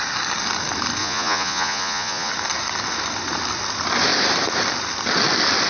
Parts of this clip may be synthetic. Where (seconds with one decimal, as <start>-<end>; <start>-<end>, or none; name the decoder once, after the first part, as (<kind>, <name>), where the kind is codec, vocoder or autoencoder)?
1.0-2.3 (vocoder, Vocos)